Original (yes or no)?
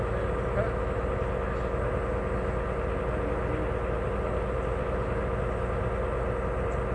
yes